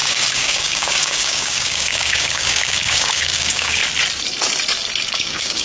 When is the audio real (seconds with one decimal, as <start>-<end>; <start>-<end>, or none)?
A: 3.8-5.1